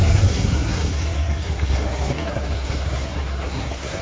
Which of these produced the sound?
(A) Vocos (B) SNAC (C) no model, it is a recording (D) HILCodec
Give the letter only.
B